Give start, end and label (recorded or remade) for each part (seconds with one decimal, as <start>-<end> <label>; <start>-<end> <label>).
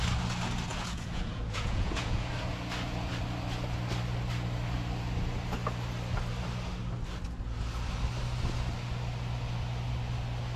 0.0-0.7 recorded; 0.7-2.3 remade; 2.3-10.6 recorded